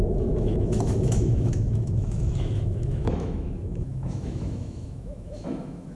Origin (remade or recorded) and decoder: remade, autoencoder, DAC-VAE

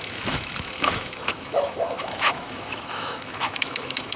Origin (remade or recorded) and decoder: remade, autoencoder, DAC-VAE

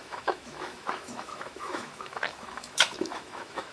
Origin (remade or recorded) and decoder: remade, autoencoder, DAC-VAE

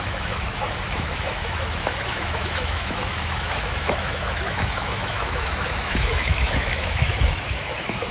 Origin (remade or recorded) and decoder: remade, autoencoder, DAC-VAE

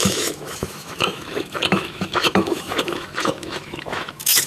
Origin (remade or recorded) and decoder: remade, autoencoder, DAC-VAE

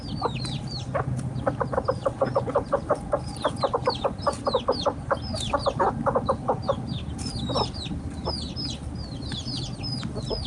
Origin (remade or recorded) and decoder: recorded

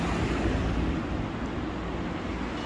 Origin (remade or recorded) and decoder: recorded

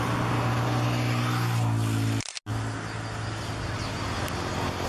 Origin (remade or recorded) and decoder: recorded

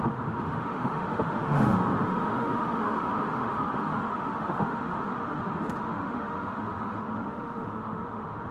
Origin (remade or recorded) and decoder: remade, autoencoder, DAC-VAE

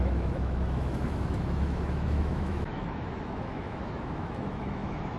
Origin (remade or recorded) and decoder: remade, autoencoder, DAC-VAE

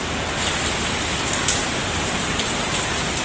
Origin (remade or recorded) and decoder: recorded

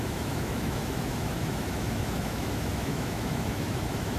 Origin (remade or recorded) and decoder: remade, autoencoder, DAC-VAE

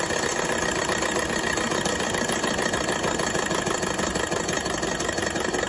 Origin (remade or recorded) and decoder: recorded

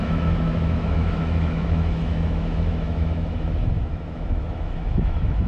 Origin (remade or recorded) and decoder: remade, autoencoder, DAC-VAE